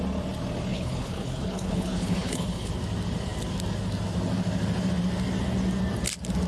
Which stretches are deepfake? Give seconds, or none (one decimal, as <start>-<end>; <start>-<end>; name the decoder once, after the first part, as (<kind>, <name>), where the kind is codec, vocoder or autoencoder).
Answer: 0.7-2.7 (codec, HILCodec)